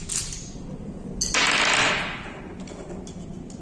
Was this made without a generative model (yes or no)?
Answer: yes